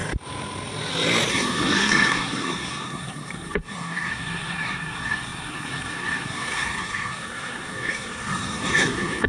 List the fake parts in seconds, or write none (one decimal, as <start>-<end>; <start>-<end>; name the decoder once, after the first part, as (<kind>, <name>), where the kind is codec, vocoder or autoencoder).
1.3-9.3 (codec, SNAC)